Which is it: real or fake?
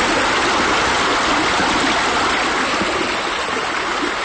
real